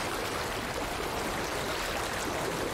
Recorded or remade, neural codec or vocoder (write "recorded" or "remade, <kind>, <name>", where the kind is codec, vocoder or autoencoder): recorded